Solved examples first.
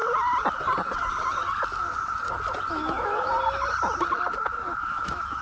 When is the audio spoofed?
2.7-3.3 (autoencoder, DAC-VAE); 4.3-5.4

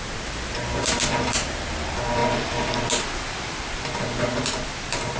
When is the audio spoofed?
none

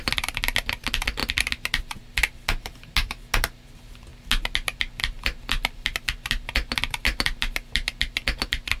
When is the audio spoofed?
none

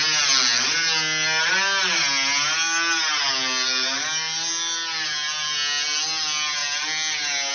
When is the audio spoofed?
none

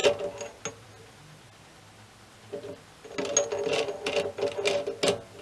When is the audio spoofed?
none